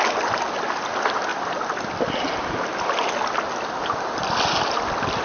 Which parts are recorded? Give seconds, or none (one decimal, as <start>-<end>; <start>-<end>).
0.0-5.2